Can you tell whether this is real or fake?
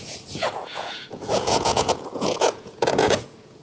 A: fake